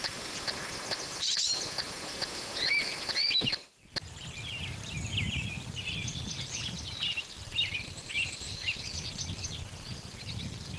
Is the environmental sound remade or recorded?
recorded